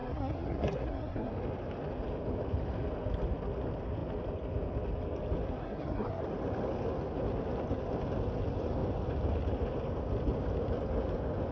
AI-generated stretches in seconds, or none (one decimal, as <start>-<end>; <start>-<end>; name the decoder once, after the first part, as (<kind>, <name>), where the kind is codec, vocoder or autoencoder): 0.0-1.3 (codec, SNAC); 5.6-6.2